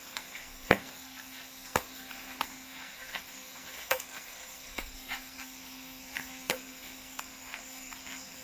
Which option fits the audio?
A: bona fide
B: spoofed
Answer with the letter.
B